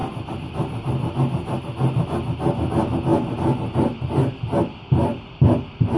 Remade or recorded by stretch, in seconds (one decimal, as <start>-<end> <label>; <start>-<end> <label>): 0.0-6.0 recorded